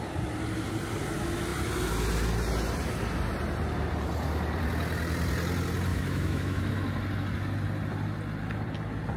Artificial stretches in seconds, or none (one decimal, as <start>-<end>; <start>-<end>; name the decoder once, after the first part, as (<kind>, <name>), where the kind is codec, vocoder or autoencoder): 5.9-6.7 (autoencoder, DAC-VAE)